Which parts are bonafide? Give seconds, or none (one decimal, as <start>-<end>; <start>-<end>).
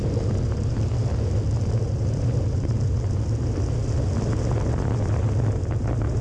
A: 0.0-6.2